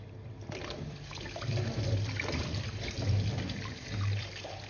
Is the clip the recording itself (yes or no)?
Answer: no